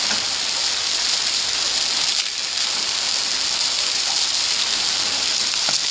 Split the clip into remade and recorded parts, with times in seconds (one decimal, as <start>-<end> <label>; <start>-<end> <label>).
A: 0.0-0.6 recorded; 0.6-1.6 remade; 1.6-5.9 recorded